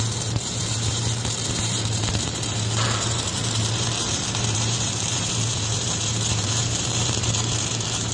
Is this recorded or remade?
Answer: remade